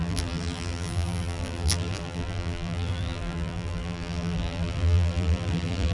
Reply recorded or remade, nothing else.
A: remade